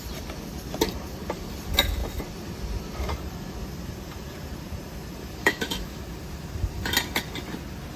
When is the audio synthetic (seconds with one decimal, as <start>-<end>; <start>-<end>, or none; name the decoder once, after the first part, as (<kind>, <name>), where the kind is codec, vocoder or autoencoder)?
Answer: 5.4-6.0 (autoencoder, DAC-VAE)